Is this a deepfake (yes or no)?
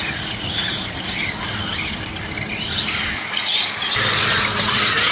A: no